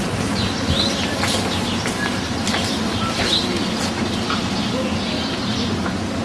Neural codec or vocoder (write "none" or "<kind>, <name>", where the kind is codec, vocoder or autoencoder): none